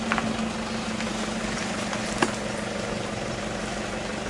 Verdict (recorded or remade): recorded